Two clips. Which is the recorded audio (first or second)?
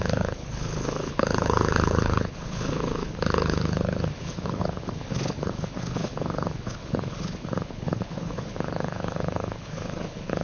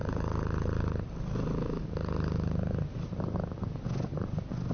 second